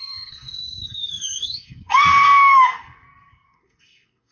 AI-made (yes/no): yes